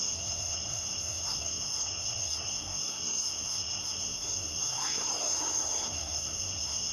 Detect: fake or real fake